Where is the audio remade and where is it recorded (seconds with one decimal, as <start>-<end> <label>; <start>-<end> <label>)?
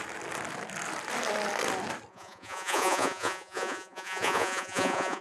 0.0-2.1 recorded; 2.1-5.2 remade